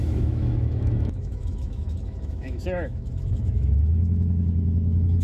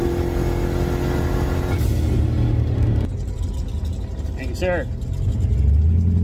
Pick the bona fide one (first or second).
second